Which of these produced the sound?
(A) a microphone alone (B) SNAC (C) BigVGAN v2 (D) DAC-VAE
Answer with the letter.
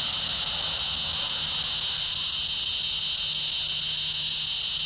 A